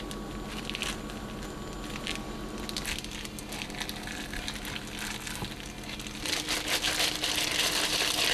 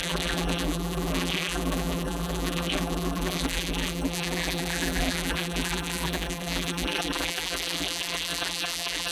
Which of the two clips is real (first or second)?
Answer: first